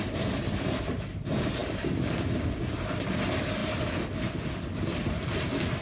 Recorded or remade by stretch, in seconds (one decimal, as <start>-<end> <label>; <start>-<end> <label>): 0.0-1.6 recorded; 1.6-2.6 remade; 2.6-5.8 recorded